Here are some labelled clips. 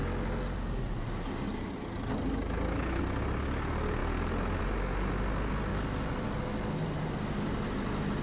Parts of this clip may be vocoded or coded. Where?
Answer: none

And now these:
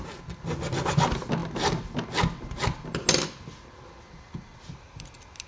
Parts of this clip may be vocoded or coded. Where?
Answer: none

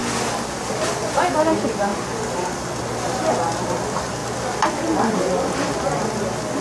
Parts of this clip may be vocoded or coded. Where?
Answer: none

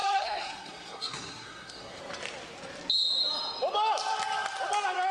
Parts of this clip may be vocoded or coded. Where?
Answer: 0.0-2.0 (codec, SNAC)

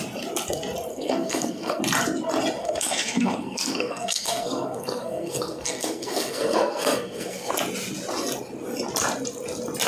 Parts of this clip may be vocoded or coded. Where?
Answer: 0.9-1.8 (codec, SNAC); 2.6-7.5

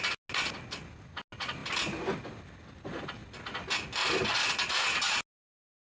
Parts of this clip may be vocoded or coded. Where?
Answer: none

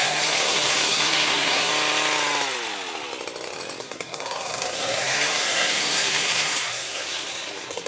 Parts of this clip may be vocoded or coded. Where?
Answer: 0.0-1.7 (codec, SNAC); 3.8-7.9